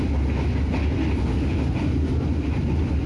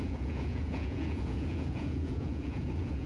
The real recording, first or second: first